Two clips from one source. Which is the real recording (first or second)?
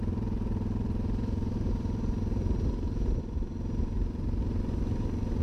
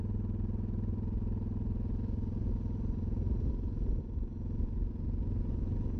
second